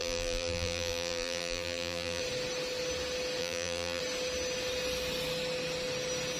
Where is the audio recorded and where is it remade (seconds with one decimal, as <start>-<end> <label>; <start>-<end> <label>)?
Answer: 0.0-2.2 remade; 2.2-3.4 recorded; 3.4-4.0 remade; 4.0-6.4 recorded